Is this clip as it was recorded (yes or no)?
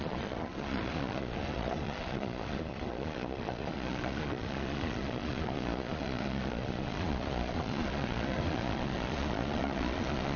no